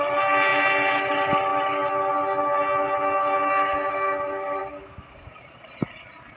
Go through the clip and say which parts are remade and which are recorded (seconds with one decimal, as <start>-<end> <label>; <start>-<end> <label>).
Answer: 0.0-6.4 recorded